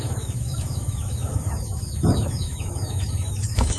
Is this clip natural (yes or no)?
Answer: no